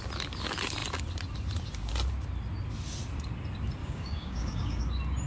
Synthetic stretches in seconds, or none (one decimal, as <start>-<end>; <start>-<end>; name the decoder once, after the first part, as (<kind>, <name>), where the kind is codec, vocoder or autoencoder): 3.8-4.8 (codec, DAC)